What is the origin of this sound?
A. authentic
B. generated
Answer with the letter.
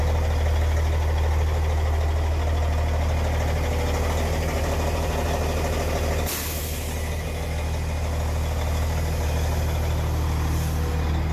A